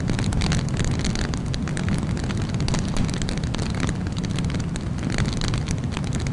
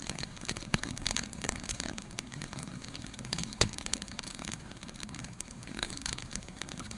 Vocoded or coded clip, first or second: second